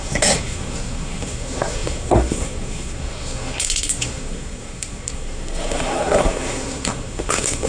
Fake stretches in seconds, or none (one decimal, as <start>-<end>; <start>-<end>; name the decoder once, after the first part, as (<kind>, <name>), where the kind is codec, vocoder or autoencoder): 0.0-7.7 (codec, SNAC)